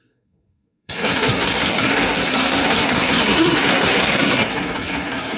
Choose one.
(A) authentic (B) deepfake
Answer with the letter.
B